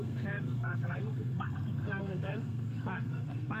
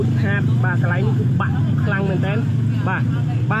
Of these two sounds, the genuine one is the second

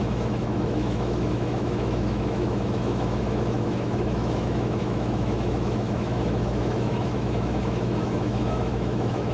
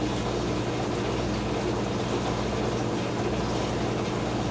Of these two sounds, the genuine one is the second